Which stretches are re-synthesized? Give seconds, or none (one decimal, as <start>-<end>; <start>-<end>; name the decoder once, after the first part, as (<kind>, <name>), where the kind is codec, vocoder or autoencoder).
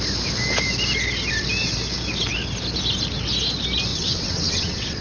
3.9-5.0 (vocoder, WaveNeXt)